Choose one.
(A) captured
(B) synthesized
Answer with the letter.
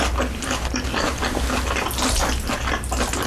A